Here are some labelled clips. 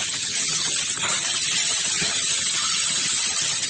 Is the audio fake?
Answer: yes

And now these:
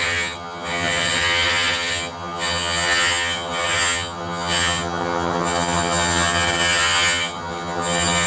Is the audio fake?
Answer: yes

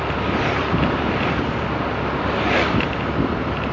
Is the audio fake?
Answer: no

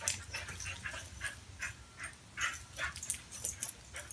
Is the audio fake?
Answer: no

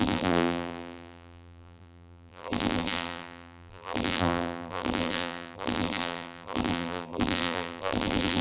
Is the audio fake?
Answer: yes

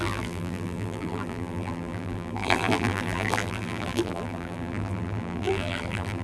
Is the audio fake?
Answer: yes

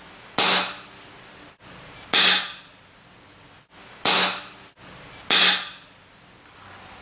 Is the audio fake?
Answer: no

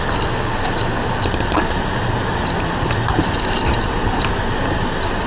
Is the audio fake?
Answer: no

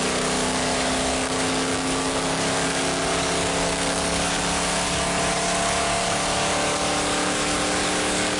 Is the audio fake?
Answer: yes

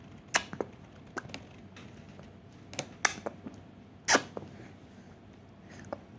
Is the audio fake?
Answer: no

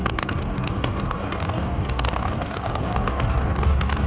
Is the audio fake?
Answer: yes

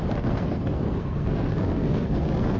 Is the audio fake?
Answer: yes